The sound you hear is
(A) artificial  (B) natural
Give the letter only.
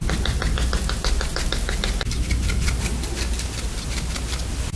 B